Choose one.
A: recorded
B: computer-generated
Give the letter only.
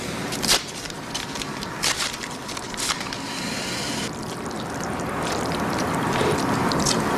B